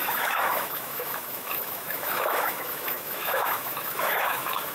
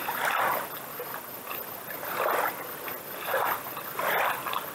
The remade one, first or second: first